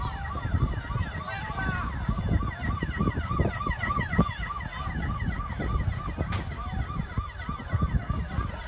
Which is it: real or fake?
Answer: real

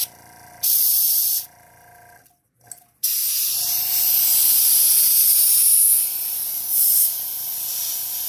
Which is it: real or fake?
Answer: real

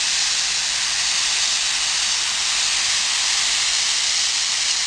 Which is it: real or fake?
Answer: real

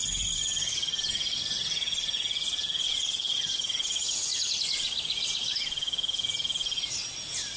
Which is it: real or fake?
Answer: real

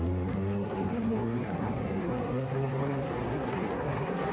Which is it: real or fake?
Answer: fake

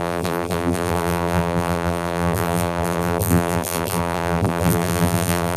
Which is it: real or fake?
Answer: fake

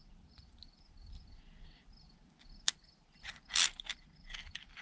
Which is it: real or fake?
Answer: real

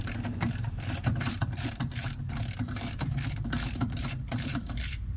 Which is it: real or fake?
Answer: fake